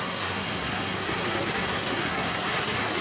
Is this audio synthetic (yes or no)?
yes